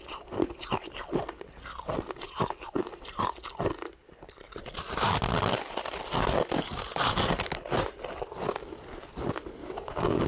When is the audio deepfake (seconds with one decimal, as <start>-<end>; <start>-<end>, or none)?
9.6-10.3